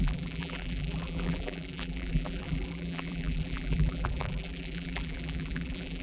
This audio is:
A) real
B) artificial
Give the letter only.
B